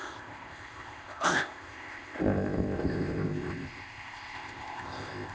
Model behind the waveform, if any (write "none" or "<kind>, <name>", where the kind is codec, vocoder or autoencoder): codec, ZipCodec